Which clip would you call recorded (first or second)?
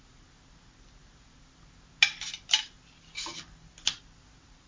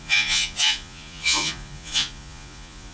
first